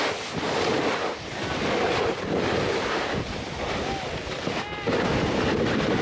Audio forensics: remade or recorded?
recorded